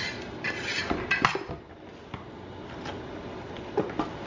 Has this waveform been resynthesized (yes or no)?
no